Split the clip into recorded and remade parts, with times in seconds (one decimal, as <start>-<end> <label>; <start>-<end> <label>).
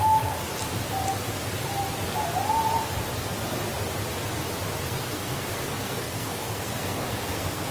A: 0.0-0.5 remade; 0.5-4.8 recorded; 4.8-7.7 remade